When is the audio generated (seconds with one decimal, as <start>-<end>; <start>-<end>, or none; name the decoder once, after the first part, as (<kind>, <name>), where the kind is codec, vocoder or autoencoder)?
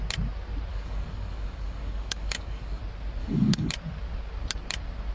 0.7-2.8 (codec, DAC); 3.2-3.7